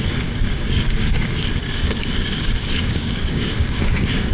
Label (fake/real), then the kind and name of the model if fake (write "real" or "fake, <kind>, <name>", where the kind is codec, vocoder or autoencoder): fake, codec, DAC